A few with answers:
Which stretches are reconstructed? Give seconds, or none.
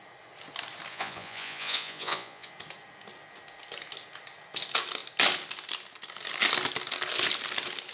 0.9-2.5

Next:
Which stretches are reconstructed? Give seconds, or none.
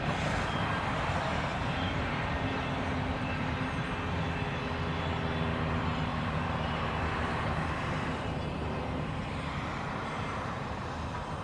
1.5-3.9; 6.1-10.8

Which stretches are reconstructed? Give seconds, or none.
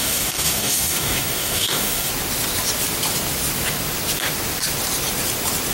0.0-2.1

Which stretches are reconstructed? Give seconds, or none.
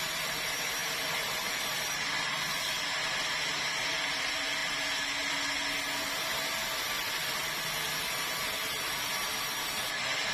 0.8-2.6